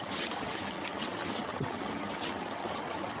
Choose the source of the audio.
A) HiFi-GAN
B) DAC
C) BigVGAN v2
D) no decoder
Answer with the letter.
A